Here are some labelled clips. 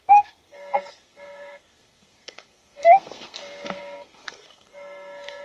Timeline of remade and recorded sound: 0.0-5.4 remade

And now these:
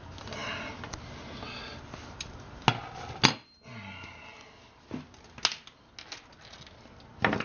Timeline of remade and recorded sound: 0.0-7.4 recorded

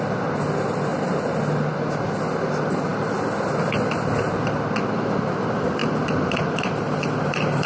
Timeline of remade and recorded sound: 0.0-2.9 recorded; 2.9-3.5 remade; 3.5-5.8 recorded; 5.8-7.7 remade

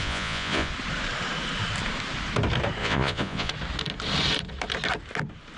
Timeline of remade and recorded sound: 0.0-0.7 remade; 0.7-2.8 recorded; 2.8-3.5 remade; 3.5-5.6 recorded

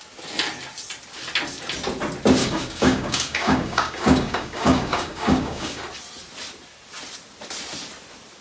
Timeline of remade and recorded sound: 0.0-2.4 recorded; 2.4-5.8 remade; 5.8-8.4 recorded

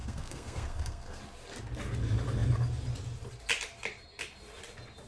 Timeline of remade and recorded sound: 0.0-1.2 remade; 1.2-5.1 recorded

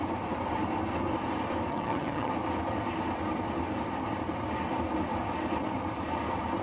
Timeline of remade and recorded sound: 0.0-1.7 recorded; 1.7-2.3 remade; 2.3-6.6 recorded